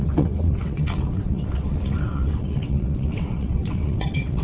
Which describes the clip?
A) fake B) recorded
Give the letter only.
A